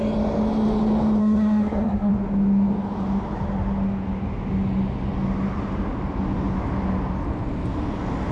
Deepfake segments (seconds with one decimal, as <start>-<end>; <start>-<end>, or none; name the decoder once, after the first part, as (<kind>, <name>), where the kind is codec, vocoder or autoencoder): 1.2-2.1 (codec, SNAC)